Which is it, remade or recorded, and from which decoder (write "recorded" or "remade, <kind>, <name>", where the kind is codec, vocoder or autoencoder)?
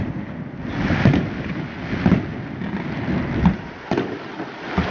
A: recorded